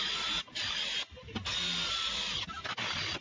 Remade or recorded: recorded